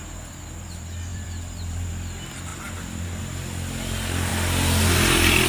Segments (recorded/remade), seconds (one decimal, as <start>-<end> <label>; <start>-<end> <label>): 0.0-1.1 recorded; 1.1-1.9 remade; 1.9-2.5 recorded; 2.5-3.2 remade; 3.2-5.5 recorded